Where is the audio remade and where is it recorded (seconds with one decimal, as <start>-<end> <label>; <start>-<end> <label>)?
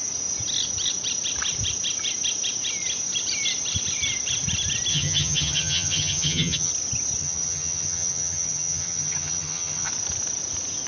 0.0-4.9 recorded; 4.9-6.7 remade; 6.7-7.2 recorded; 7.2-9.9 remade; 9.9-10.9 recorded